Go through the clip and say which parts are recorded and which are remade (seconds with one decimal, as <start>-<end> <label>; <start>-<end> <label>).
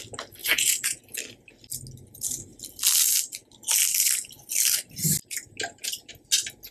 0.0-0.4 recorded; 0.4-1.0 remade; 1.0-6.7 recorded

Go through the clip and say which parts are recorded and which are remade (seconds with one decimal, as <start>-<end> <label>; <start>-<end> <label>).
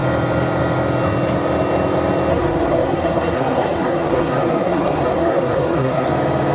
0.0-2.3 recorded; 2.3-6.1 remade; 6.1-6.5 recorded